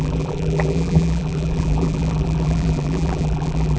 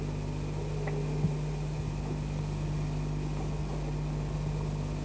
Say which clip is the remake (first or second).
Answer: first